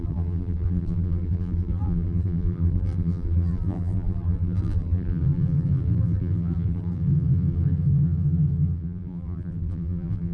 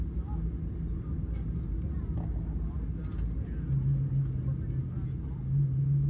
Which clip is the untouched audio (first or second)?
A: second